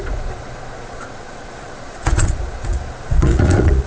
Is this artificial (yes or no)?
yes